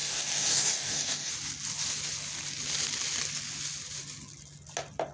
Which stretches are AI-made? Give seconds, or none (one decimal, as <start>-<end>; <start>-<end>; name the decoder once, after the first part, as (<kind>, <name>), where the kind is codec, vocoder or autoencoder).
0.0-1.3 (codec, DAC)